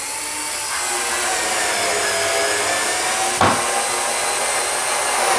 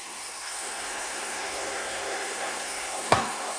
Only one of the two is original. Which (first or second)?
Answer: first